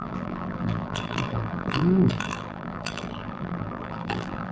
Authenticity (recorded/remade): remade